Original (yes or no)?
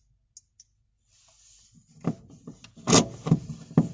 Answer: yes